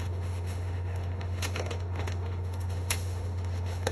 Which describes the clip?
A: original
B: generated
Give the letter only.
B